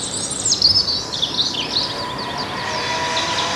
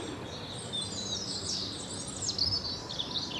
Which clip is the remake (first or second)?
second